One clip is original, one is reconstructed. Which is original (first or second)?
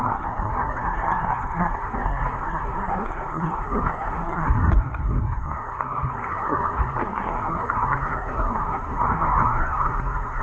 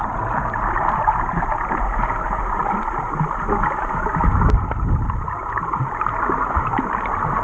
second